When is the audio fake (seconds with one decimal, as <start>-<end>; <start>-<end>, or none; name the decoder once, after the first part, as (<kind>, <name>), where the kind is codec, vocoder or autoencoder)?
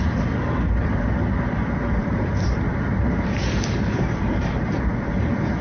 2.0-4.7 (vocoder, BigVGAN v2)